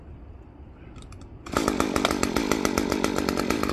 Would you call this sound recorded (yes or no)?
no